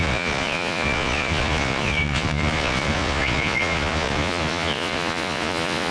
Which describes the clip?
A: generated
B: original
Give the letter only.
A